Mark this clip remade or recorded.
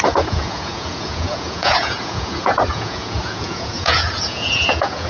remade